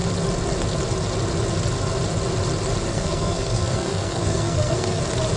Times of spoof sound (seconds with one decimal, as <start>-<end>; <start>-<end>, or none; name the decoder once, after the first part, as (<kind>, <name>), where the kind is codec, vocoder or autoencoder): 2.9-5.0 (codec, SNAC)